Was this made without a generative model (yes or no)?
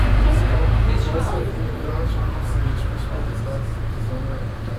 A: yes